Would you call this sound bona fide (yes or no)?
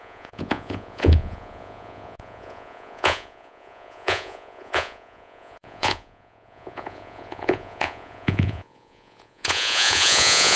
no